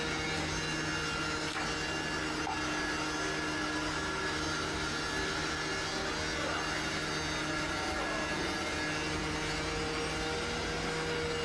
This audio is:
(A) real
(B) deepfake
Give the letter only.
A